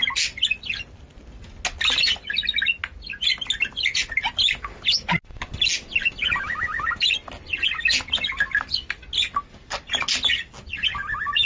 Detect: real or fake real